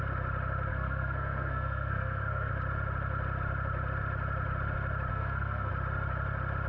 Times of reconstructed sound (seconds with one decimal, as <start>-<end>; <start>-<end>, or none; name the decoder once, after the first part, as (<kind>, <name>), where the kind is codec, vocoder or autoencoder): 0.7-2.5 (codec, SNAC); 5.1-5.7